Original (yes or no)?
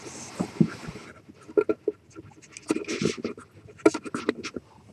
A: yes